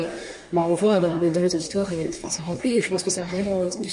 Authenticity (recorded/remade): remade